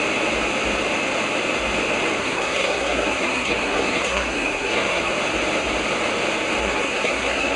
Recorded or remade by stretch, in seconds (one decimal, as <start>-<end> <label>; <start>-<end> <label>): 0.0-2.2 recorded; 2.2-5.1 remade; 5.1-6.6 recorded; 6.6-7.6 remade